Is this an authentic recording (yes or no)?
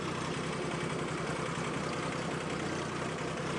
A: yes